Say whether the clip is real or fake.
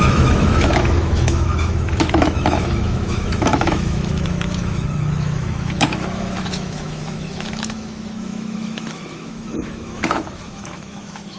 fake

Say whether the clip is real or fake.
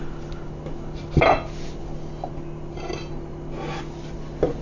real